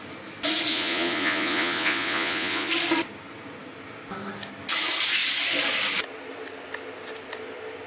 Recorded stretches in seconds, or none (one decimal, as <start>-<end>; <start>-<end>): 0.0-0.7; 2.7-7.9

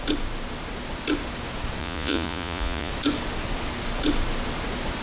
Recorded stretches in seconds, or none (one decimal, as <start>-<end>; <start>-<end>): 0.0-1.8; 2.9-5.0

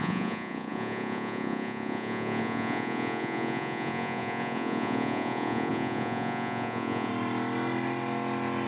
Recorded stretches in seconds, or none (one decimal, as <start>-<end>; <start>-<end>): 7.1-8.7

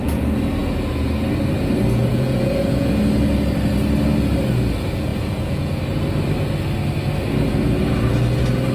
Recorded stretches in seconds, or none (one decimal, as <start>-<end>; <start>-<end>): 0.0-2.1; 3.0-5.1; 5.8-8.7